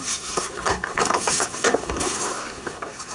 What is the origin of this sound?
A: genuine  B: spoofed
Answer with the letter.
B